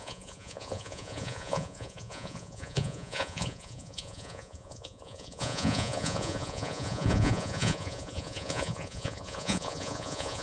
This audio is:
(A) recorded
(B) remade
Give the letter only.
B